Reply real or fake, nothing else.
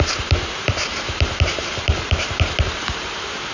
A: fake